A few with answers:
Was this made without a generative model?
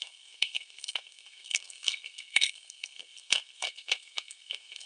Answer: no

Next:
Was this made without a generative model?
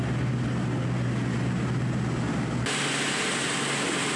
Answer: yes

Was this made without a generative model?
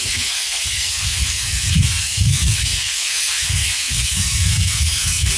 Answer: no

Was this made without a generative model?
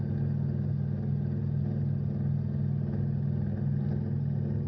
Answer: yes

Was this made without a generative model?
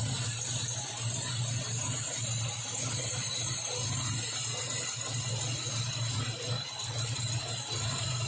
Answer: yes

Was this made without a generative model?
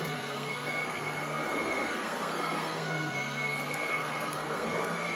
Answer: no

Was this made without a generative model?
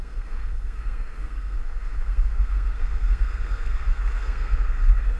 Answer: no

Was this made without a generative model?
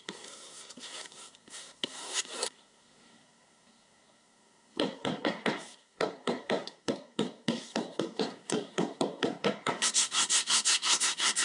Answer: no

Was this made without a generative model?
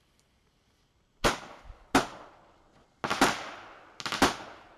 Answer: yes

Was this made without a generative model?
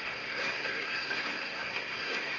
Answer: no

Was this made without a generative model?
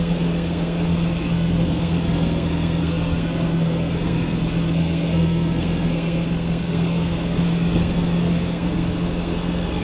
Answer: no